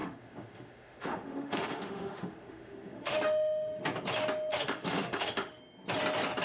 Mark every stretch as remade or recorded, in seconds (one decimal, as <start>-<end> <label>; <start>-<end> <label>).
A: 0.0-3.8 remade; 3.8-4.5 recorded; 4.5-5.6 remade; 5.6-6.4 recorded